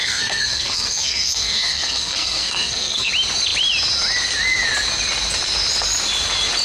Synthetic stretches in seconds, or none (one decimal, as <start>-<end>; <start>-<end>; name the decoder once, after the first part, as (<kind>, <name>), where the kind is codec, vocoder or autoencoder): 0.0-3.1 (codec, SNAC)

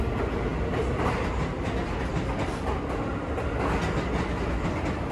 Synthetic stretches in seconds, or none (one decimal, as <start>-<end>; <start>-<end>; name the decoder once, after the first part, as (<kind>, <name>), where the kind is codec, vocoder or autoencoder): none

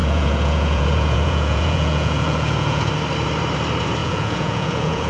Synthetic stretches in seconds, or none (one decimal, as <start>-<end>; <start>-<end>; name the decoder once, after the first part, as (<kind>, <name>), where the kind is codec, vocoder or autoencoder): 0.0-2.9 (vocoder, Vocos); 4.0-5.1

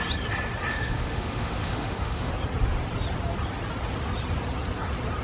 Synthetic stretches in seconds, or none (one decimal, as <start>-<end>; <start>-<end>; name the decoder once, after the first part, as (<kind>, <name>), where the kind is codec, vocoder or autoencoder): 0.7-2.3 (autoencoder, DAC-VAE)

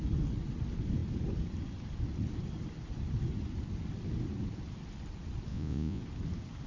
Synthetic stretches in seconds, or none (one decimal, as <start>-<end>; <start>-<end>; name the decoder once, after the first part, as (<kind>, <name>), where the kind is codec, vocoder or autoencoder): 5.5-6.0 (vocoder, Vocos)

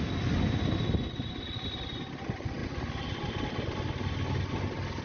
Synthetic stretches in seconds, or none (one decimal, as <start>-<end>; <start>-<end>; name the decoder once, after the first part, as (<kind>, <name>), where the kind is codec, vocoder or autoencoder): none

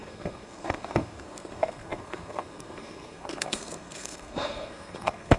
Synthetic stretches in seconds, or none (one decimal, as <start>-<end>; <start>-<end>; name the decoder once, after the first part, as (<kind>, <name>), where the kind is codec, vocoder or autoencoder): 0.0-5.4 (codec, SNAC)

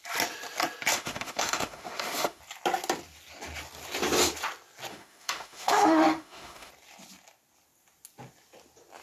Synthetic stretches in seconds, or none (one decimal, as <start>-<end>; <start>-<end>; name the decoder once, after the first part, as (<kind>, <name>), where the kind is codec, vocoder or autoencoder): 0.9-2.4 (autoencoder, DAC-VAE); 4.9-6.7